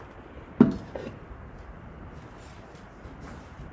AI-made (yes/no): no